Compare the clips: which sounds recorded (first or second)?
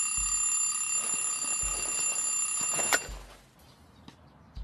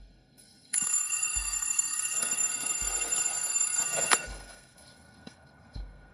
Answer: first